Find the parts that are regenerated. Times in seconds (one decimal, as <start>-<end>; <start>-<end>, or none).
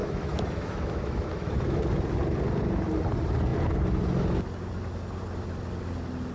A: 0.0-1.8